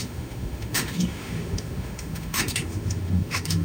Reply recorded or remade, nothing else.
remade